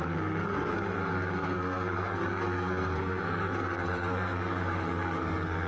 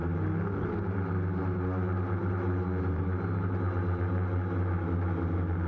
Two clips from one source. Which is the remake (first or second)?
first